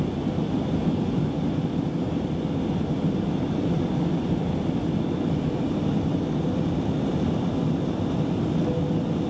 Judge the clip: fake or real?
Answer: real